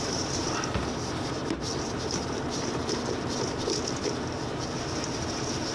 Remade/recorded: recorded